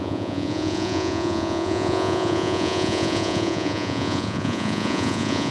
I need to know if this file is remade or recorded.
remade